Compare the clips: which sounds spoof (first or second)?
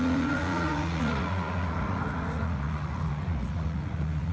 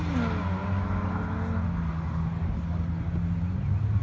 first